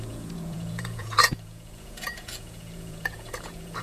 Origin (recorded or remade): remade